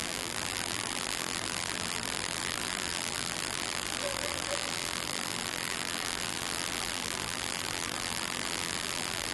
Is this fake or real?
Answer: fake